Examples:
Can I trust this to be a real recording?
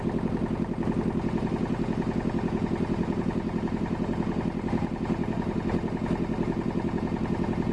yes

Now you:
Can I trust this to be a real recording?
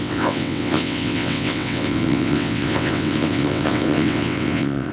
no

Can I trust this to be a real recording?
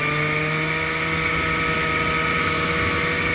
yes